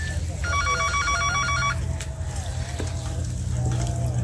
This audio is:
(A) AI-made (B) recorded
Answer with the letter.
B